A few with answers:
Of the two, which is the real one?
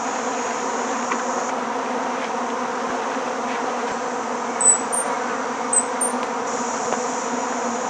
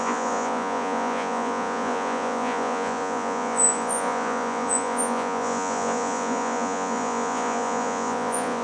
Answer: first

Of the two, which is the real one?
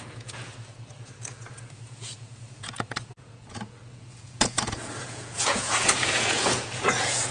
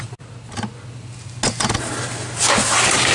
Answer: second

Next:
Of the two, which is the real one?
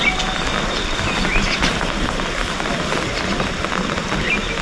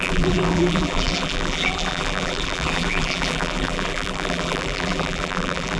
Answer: first